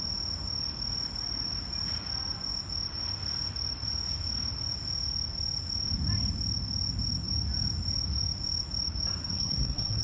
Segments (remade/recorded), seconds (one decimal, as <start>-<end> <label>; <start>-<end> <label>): 0.0-9.2 recorded; 9.2-10.0 remade